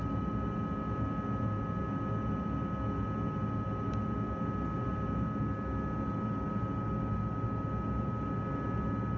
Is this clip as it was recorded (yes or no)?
yes